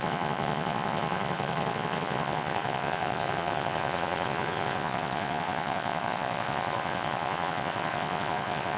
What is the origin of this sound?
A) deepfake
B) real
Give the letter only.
A